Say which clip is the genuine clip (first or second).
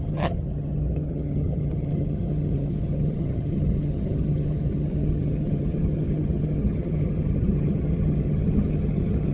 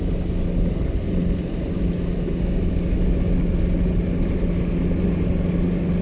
second